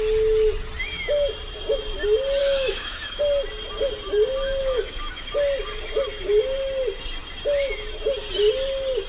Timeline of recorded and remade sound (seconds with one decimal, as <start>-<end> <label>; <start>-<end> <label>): 0.0-2.4 recorded; 2.4-3.2 remade; 3.2-4.6 recorded; 4.6-5.3 remade; 5.3-9.1 recorded